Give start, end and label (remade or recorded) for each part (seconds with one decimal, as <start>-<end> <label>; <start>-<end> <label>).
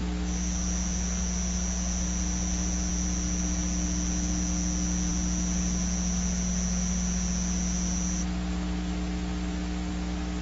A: 0.0-10.4 recorded